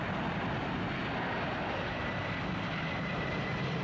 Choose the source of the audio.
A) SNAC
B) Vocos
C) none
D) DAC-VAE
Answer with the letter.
C